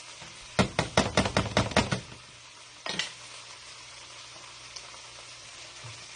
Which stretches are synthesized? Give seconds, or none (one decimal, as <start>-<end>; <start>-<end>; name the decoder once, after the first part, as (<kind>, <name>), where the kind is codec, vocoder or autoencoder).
none

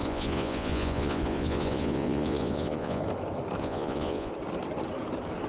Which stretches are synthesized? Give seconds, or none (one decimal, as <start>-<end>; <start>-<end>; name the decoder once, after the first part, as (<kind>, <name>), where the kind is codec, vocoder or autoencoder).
0.0-3.0 (vocoder, Vocos); 3.6-4.3

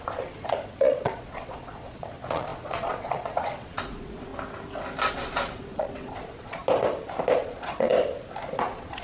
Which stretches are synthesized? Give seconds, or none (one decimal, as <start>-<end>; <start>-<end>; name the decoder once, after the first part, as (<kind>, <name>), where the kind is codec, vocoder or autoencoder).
0.0-4.3 (vocoder, Vocos); 5.1-6.6; 7.4-7.9; 8.6-9.0

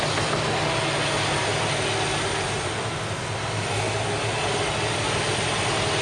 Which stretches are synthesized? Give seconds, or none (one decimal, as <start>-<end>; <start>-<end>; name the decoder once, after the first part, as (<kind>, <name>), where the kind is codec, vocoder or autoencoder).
none